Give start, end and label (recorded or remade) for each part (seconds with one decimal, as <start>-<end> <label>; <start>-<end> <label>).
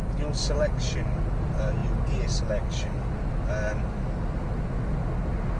0.0-5.6 recorded